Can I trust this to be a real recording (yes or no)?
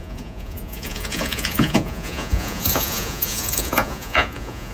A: no